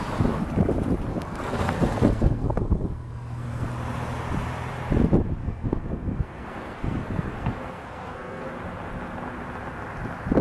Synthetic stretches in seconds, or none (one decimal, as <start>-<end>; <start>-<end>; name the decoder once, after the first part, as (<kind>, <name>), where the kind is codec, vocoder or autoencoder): 1.1-3.7 (codec, SNAC); 5.4-8.5